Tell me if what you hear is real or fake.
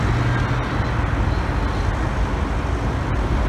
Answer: real